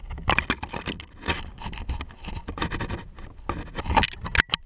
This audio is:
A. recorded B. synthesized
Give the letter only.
A